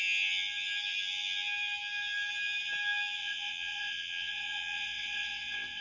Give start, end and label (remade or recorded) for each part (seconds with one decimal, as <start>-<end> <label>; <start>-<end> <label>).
0.0-3.2 recorded; 3.2-5.8 remade